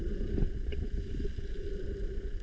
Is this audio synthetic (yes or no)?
no